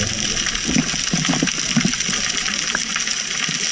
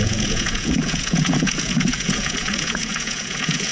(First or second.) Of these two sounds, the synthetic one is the second